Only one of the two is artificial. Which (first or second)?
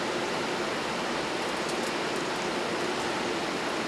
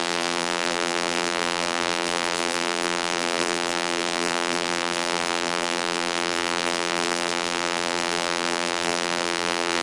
second